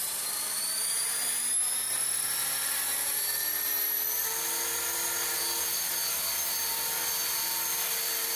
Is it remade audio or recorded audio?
recorded